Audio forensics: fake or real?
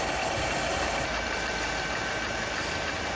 fake